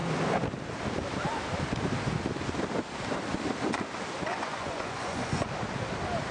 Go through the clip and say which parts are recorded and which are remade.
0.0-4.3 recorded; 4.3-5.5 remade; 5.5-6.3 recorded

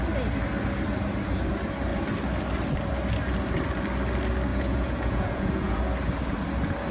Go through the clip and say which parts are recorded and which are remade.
0.0-4.5 recorded; 4.5-5.8 remade; 5.8-6.9 recorded

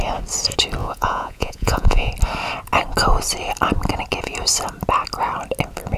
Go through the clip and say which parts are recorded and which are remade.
0.0-0.8 recorded; 0.8-2.1 remade; 2.1-6.0 recorded

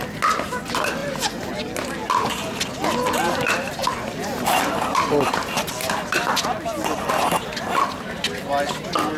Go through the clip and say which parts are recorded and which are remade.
0.0-9.2 recorded

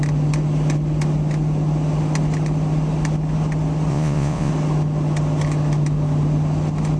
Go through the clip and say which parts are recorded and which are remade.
0.0-3.9 recorded; 3.9-4.5 remade; 4.5-7.0 recorded

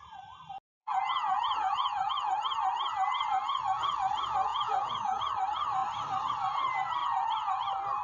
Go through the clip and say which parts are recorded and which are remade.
0.0-0.8 recorded; 0.8-2.1 remade; 2.1-4.5 recorded; 4.5-5.2 remade; 5.2-7.0 recorded; 7.0-7.6 remade; 7.6-8.0 recorded

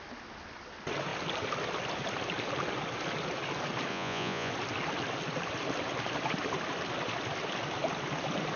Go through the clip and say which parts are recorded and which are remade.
0.0-3.9 recorded; 3.9-4.5 remade; 4.5-8.6 recorded

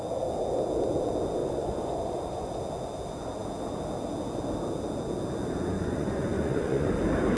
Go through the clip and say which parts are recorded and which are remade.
0.0-1.4 recorded; 1.4-2.5 remade; 2.5-5.7 recorded; 5.7-7.0 remade; 7.0-7.4 recorded